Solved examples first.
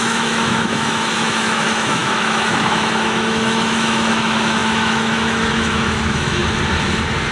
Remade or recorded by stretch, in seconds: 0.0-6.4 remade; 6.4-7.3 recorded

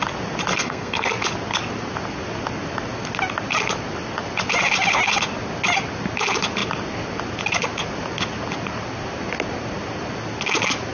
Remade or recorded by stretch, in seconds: 0.0-0.5 recorded; 0.5-1.1 remade; 1.1-10.9 recorded

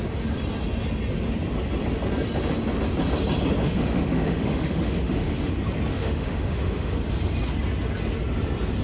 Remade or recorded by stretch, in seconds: 0.0-3.6 recorded; 3.6-5.5 remade; 5.5-5.9 recorded; 5.9-6.9 remade; 6.9-8.8 recorded

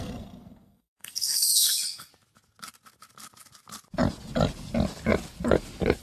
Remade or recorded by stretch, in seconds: 0.0-2.1 remade; 2.1-6.0 recorded

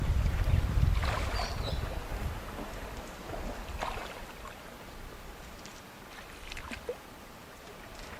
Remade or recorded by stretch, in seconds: 0.0-2.1 remade; 2.1-3.5 recorded; 3.5-4.0 remade; 4.0-4.8 recorded; 4.8-5.7 remade; 5.7-6.6 recorded; 6.6-8.2 remade